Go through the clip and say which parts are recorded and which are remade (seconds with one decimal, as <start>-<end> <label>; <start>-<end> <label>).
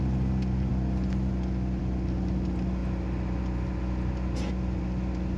0.0-5.4 recorded